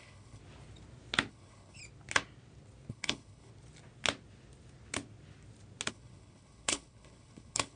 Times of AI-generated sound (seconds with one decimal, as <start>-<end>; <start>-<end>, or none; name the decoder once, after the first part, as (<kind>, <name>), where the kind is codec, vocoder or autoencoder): 0.0-0.4 (codec, HILCodec); 1.3-1.8; 2.9-3.5; 5.9-7.8